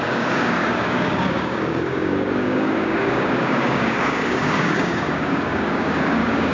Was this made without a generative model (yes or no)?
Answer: no